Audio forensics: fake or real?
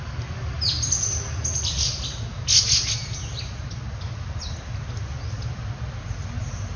real